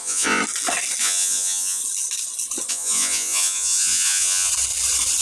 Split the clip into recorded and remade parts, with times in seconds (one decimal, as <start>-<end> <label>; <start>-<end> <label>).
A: 0.0-0.4 remade; 0.4-1.0 recorded; 1.0-1.8 remade; 1.8-2.7 recorded; 2.7-4.5 remade; 4.5-5.2 recorded